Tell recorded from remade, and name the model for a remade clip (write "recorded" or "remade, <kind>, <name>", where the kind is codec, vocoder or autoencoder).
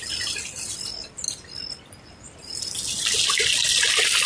recorded